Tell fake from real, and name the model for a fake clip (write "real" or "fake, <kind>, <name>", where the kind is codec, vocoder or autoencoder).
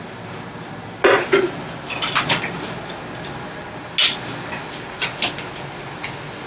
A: real